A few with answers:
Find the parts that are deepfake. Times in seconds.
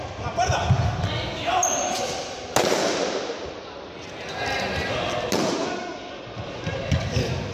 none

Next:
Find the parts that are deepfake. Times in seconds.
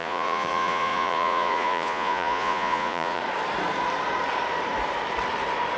0.0-3.2 (vocoder, Vocos)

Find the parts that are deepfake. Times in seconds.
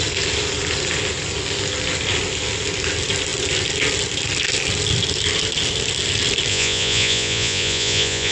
6.5-8.3 (vocoder, Vocos)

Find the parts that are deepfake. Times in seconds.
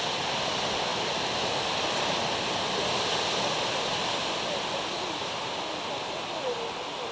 none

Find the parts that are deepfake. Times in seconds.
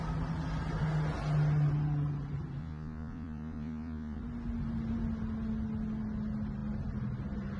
2.6-4.2 (vocoder, Vocos)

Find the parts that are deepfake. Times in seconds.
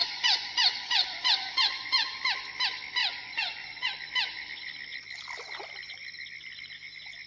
0.0-2.2 (vocoder, Vocos); 3.0-3.9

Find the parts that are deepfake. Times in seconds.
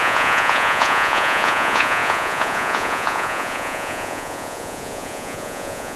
0.0-6.0 (vocoder, Vocos)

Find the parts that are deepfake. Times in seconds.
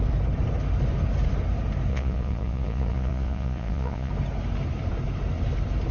1.9-4.1 (vocoder, Vocos)